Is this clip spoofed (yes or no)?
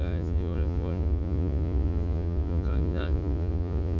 yes